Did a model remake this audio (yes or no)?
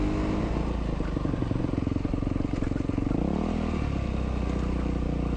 no